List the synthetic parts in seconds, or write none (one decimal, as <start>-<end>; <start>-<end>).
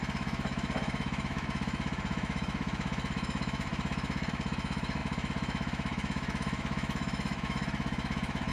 0.0-8.5